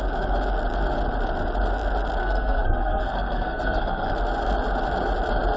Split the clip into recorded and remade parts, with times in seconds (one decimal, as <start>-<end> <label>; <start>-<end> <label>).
0.0-2.2 recorded; 2.2-4.1 remade; 4.1-5.6 recorded